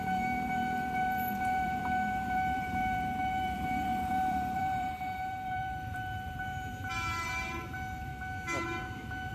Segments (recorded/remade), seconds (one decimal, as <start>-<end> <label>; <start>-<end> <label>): 0.0-8.1 remade; 8.1-9.3 recorded